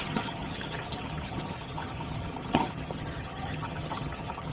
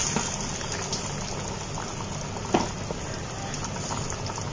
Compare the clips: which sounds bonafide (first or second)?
second